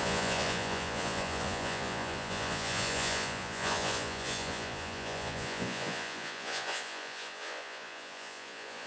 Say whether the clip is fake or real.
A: fake